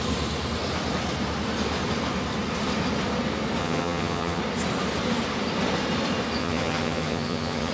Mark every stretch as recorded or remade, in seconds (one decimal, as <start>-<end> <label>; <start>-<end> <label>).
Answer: 0.0-3.6 recorded; 3.6-4.4 remade; 4.4-6.4 recorded; 6.4-7.7 remade

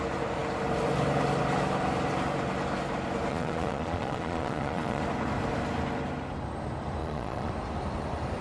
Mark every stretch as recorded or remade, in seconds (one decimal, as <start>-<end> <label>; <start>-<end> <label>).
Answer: 0.0-3.3 recorded; 3.3-5.0 remade; 5.0-7.0 recorded; 7.0-7.5 remade; 7.5-8.4 recorded

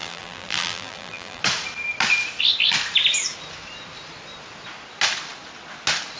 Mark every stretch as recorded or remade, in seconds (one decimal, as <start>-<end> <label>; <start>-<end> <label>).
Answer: 0.0-1.4 remade; 1.4-6.2 recorded

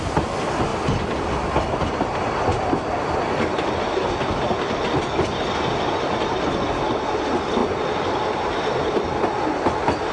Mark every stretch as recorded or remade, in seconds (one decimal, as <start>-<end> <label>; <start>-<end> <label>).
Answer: 0.0-10.1 recorded

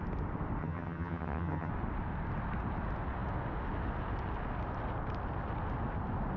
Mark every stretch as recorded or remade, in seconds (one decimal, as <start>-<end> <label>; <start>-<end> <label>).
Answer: 0.0-0.6 recorded; 0.6-1.7 remade; 1.7-6.4 recorded